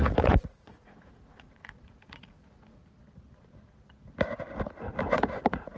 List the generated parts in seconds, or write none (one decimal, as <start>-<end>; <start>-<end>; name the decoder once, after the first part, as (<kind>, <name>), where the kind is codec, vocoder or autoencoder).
0.0-2.8 (vocoder, Vocos); 5.0-5.8